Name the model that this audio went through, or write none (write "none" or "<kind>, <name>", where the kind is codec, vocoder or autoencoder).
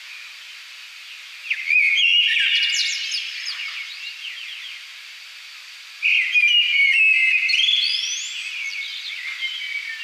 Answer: none